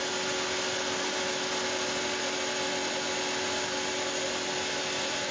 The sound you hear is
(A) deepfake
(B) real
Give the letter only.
B